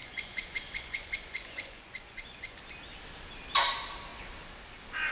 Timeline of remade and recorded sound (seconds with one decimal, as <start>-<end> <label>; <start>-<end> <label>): 0.0-2.6 remade; 2.6-5.1 recorded